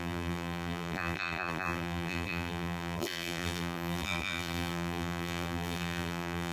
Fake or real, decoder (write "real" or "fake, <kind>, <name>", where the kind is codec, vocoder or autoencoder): fake, vocoder, BigVGAN v2